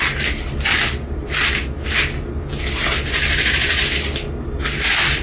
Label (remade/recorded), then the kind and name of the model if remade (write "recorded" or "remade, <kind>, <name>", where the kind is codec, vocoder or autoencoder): recorded